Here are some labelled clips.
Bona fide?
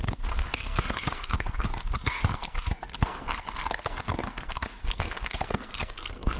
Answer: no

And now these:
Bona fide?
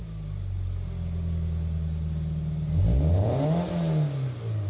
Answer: yes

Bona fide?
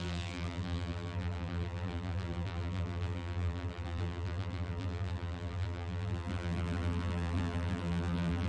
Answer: no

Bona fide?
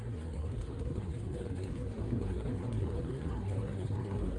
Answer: no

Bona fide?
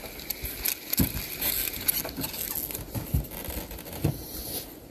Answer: yes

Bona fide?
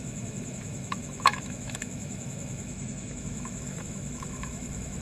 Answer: no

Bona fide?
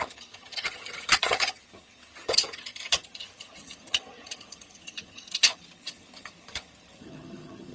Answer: no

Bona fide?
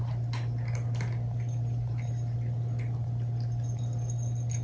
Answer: yes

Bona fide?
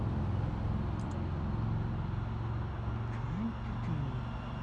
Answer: yes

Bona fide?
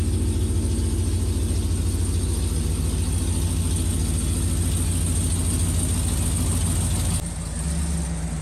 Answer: yes